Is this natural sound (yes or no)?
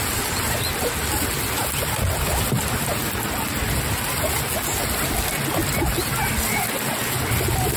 yes